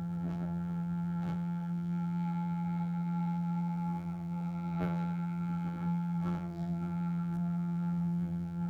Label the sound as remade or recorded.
remade